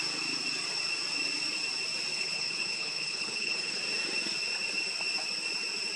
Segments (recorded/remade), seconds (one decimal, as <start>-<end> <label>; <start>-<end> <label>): 0.0-2.1 recorded; 2.1-3.8 remade; 3.8-6.0 recorded